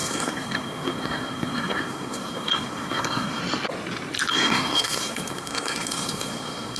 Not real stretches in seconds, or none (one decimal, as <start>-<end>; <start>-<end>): 0.0-3.4; 4.3-6.8

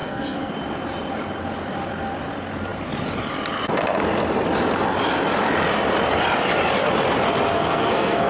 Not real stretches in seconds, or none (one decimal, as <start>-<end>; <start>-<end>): 0.0-0.5; 7.5-8.3